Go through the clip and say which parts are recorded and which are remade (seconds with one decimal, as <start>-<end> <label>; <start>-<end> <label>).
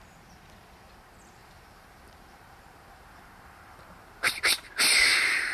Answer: 0.0-1.4 recorded; 1.4-4.7 remade; 4.7-5.5 recorded